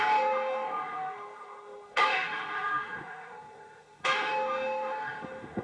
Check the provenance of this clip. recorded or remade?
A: remade